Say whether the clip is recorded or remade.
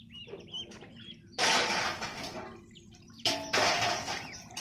recorded